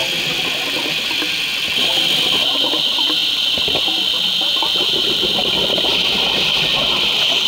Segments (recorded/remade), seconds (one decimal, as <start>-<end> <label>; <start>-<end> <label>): 0.0-1.8 remade; 1.8-7.5 recorded